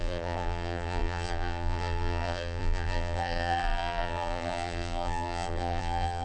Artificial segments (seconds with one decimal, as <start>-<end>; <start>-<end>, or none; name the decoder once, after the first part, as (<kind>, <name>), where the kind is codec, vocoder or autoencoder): 0.0-6.2 (vocoder, BigVGAN v2)